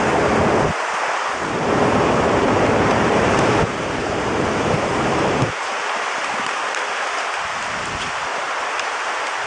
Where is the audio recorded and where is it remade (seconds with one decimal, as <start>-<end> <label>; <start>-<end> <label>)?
0.0-1.2 recorded; 1.2-5.7 remade; 5.7-8.3 recorded; 8.3-9.0 remade; 9.0-9.5 recorded